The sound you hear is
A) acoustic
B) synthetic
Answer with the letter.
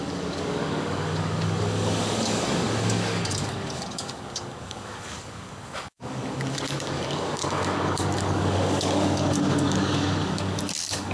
B